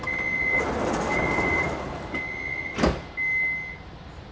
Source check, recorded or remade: recorded